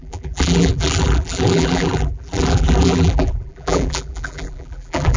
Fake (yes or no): yes